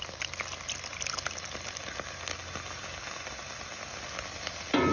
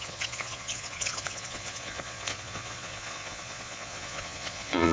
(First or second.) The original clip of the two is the first